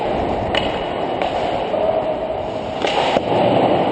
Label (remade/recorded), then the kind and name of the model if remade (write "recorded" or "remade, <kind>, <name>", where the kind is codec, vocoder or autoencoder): recorded